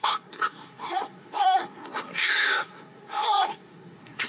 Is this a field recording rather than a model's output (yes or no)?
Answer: no